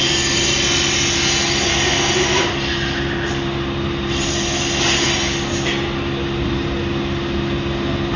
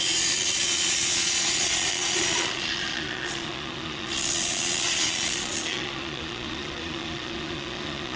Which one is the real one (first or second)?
first